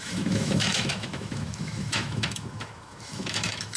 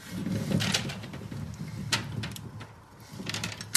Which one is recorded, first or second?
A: second